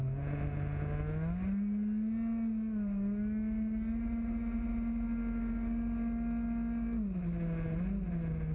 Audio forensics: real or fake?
real